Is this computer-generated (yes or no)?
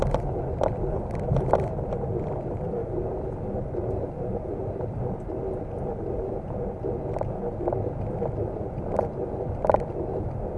no